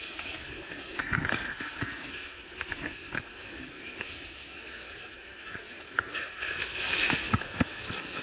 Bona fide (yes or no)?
no